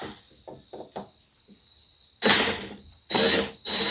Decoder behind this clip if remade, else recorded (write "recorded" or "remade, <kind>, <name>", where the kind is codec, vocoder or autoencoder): recorded